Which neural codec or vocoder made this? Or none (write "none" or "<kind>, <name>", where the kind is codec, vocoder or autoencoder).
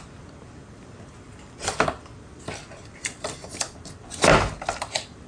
none